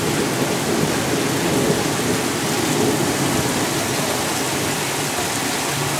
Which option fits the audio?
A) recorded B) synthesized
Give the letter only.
A